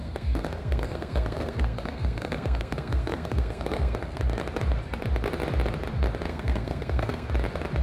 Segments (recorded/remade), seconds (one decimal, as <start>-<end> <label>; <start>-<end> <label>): 0.0-4.2 remade; 4.2-6.3 recorded; 6.3-7.3 remade; 7.3-7.8 recorded